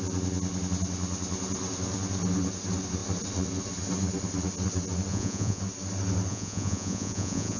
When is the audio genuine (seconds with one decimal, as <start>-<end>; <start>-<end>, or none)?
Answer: 0.0-5.1; 5.6-6.3